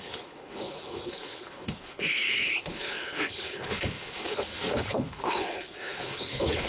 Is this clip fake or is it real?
fake